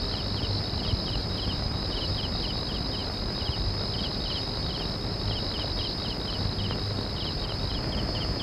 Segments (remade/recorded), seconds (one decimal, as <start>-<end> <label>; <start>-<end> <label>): 0.0-1.2 recorded; 1.2-2.1 remade; 2.1-8.4 recorded